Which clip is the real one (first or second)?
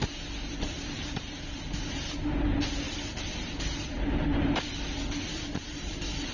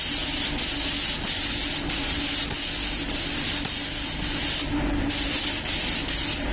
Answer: second